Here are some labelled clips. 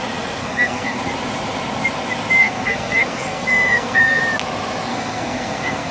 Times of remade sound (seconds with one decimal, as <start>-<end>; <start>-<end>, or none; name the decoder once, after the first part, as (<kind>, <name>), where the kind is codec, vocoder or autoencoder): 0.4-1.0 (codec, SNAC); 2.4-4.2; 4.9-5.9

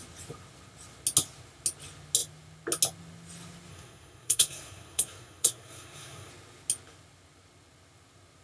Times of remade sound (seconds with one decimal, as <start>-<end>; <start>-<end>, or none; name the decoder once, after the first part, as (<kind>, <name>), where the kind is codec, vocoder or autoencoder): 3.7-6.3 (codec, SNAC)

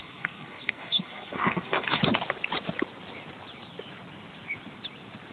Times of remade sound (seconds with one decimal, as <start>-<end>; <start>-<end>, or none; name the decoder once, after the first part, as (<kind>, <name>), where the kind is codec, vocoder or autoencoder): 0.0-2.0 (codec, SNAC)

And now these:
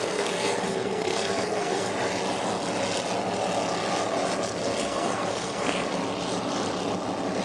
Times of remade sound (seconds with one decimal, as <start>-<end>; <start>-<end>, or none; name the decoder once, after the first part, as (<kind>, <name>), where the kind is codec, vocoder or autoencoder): 0.0-1.9 (codec, SNAC); 4.8-5.9

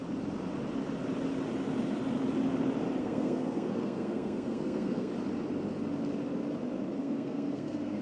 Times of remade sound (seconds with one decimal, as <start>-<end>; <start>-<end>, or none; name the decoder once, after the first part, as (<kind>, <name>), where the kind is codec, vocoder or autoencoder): 3.0-5.1 (codec, SNAC); 7.0-8.0

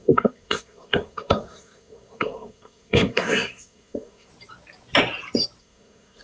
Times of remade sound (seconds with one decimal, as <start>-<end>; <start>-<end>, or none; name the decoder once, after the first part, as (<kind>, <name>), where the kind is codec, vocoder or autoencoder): 0.0-4.3 (codec, SNAC); 5.6-6.2